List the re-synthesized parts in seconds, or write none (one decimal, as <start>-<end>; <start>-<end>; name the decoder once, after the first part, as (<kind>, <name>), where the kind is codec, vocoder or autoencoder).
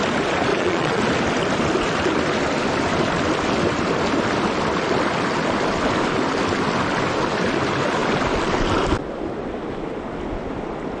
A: 0.5-1.0 (vocoder, Vocos)